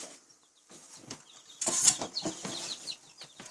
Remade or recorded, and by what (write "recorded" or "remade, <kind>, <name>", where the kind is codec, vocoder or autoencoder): recorded